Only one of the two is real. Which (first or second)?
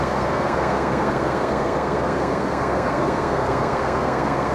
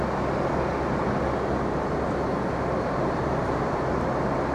second